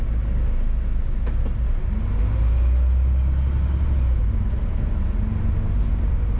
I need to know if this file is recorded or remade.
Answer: recorded